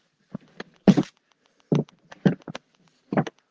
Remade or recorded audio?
recorded